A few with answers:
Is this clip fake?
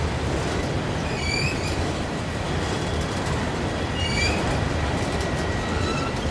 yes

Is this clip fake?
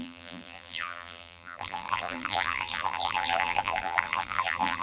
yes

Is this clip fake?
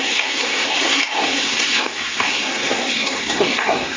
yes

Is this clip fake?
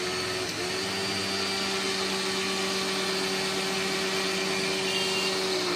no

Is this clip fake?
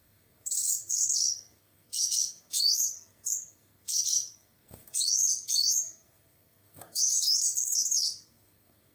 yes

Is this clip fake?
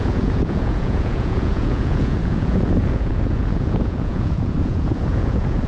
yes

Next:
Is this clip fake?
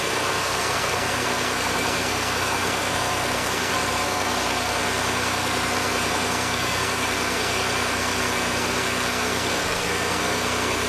yes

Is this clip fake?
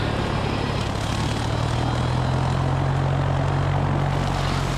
no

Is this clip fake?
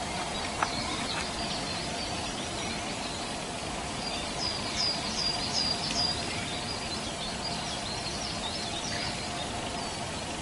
yes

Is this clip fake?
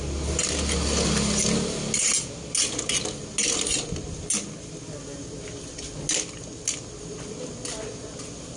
no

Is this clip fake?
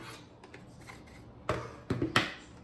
no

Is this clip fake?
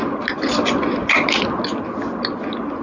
no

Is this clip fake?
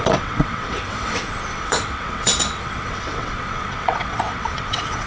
yes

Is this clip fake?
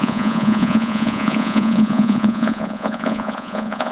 yes